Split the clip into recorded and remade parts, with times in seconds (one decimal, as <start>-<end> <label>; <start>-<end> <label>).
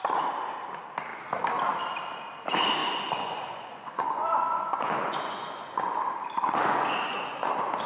0.0-2.8 recorded; 2.8-7.5 remade; 7.5-7.9 recorded